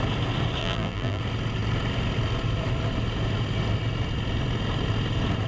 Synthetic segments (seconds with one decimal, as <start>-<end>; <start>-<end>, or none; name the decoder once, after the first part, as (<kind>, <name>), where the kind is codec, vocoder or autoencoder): 0.6-1.2 (vocoder, BigVGAN v2)